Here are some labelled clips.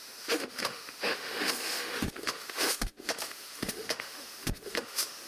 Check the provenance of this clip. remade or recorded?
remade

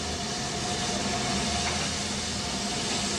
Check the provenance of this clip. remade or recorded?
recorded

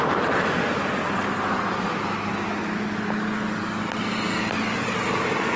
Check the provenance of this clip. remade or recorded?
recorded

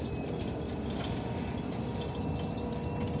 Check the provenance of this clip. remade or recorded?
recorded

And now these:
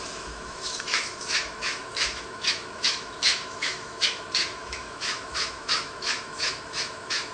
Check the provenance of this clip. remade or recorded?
remade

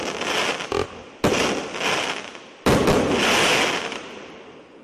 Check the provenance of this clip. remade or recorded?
recorded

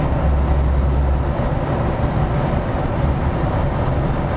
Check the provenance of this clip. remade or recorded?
recorded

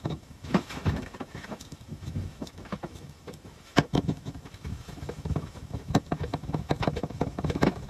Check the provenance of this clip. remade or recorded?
remade